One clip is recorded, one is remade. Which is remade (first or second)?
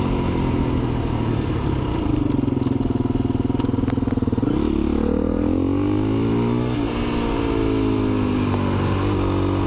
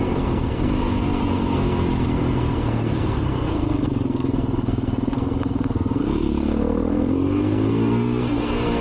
second